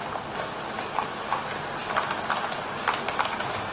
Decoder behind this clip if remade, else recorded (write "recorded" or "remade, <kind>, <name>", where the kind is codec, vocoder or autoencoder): recorded